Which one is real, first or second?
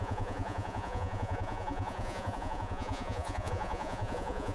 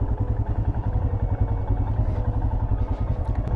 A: second